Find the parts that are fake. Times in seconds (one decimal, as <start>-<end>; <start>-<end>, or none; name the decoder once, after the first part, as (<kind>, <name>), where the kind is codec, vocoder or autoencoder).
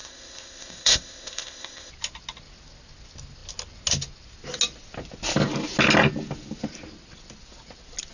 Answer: 0.0-1.9 (codec, ZipCodec)